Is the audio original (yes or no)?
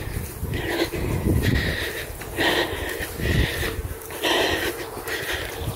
yes